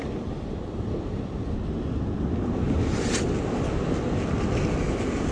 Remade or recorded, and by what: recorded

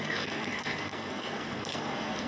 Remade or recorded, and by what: remade, codec, SNAC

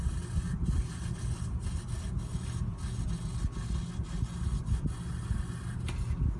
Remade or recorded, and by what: recorded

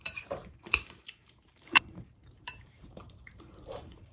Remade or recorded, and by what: remade, vocoder, BigVGAN v2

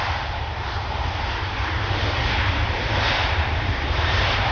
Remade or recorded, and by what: remade, vocoder, BigVGAN v2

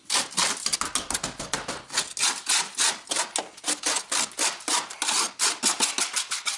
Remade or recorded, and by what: recorded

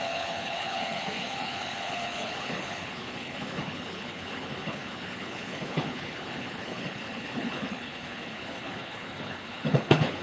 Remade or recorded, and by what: remade, codec, HILCodec